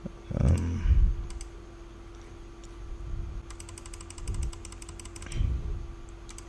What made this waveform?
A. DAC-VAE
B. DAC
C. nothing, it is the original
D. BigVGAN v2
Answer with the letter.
C